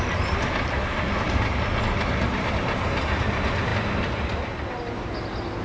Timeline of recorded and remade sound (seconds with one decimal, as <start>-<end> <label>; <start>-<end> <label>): 0.0-5.6 recorded